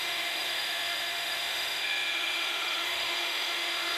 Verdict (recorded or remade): remade